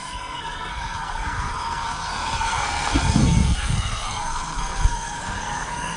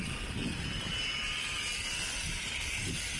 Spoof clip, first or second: first